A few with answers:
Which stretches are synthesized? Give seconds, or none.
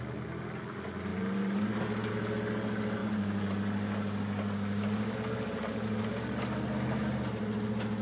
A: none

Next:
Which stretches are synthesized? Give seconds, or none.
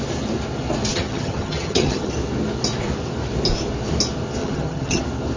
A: 0.9-2.1 (vocoder, HiFi-GAN); 4.4-5.0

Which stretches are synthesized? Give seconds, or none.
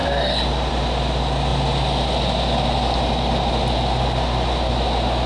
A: 0.0-0.7 (vocoder, BigVGAN v2)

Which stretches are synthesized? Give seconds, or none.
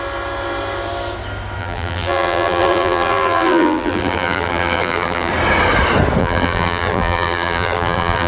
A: 1.6-5.3 (vocoder, BigVGAN v2); 6.2-8.3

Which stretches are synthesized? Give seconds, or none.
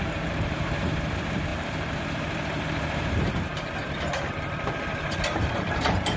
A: 0.0-6.2 (vocoder, BigVGAN v2)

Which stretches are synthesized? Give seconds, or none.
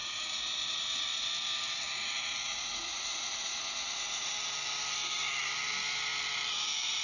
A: 0.0-1.3 (vocoder, Vocos); 2.5-4.3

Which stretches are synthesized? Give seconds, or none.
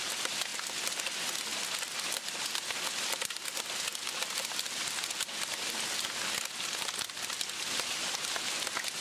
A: none